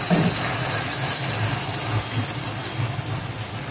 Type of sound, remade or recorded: recorded